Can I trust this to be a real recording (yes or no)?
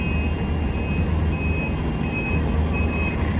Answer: yes